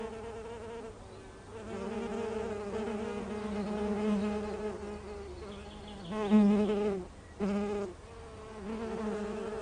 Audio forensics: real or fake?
real